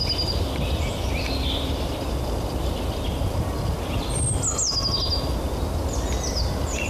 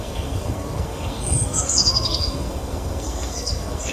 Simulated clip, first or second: second